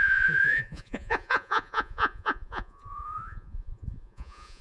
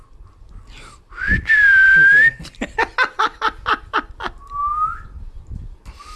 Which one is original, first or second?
second